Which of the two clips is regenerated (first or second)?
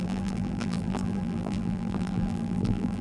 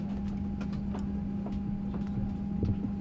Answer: first